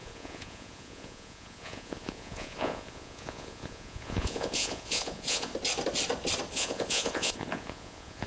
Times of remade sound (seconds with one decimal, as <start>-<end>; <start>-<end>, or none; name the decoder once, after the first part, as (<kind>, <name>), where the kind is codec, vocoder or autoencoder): 0.0-5.5 (vocoder, Vocos); 6.5-8.3

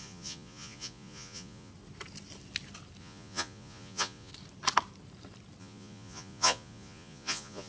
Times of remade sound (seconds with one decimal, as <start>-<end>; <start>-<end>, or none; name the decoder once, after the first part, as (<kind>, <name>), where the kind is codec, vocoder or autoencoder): 0.0-1.7 (vocoder, Vocos); 3.0-4.3; 5.6-7.7